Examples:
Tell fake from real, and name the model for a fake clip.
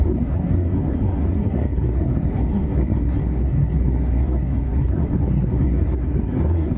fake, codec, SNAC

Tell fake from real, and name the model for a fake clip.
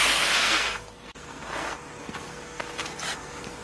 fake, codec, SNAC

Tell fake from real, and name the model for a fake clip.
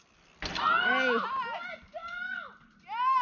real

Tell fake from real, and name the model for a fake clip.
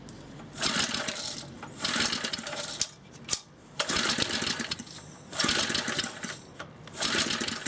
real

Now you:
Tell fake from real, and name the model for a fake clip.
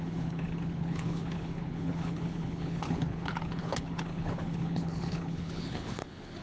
fake, codec, HILCodec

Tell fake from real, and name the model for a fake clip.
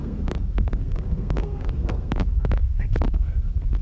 fake, codec, SNAC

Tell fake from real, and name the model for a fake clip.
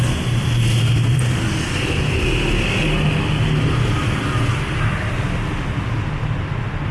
real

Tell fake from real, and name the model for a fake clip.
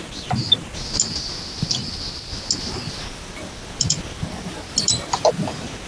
real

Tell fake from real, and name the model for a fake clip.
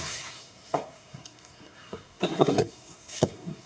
fake, codec, SNAC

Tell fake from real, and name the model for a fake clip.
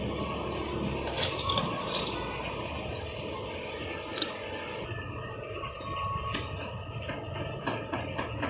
real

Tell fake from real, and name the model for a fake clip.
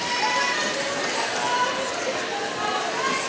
real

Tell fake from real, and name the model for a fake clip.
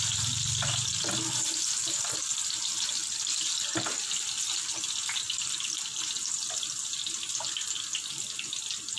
real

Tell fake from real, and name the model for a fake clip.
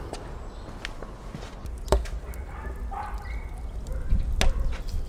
real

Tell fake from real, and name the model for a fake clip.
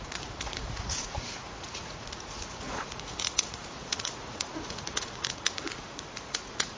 fake, vocoder, Vocos